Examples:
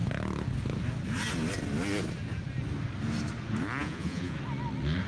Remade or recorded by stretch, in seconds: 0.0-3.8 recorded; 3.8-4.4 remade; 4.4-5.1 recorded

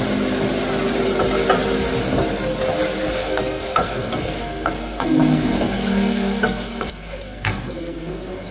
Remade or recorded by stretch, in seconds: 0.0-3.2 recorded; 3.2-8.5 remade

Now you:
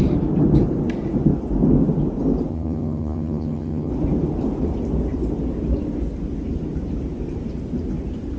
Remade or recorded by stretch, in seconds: 0.0-2.5 recorded; 2.5-3.9 remade; 3.9-8.4 recorded

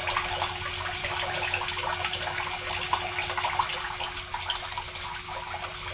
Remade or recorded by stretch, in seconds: 0.0-5.9 recorded

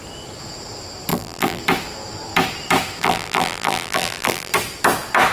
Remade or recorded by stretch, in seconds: 0.0-1.1 recorded; 1.1-1.6 remade; 1.6-3.0 recorded; 3.0-4.5 remade; 4.5-5.3 recorded

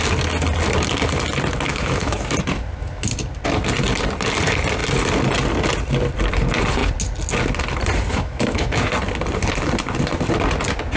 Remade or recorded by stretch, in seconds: 0.0-1.7 recorded; 1.7-2.2 remade; 2.2-8.1 recorded; 8.1-8.9 remade; 8.9-11.0 recorded

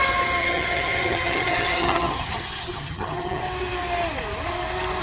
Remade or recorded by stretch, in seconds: 0.0-0.4 recorded; 0.4-3.4 remade; 3.4-5.0 recorded

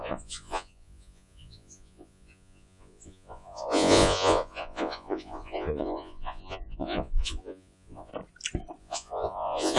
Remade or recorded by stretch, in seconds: 0.0-8.1 remade; 8.1-8.8 recorded; 8.8-9.8 remade